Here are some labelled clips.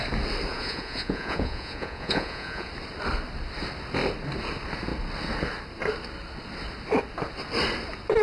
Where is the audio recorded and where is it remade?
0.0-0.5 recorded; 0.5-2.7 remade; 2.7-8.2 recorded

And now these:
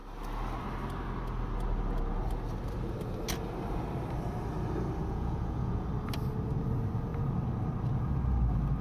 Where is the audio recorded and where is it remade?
0.0-5.0 recorded; 5.0-5.9 remade; 5.9-8.8 recorded

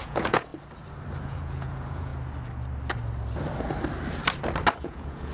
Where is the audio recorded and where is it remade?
0.0-0.5 remade; 0.5-1.2 recorded; 1.2-2.1 remade; 2.1-4.8 recorded; 4.8-5.3 remade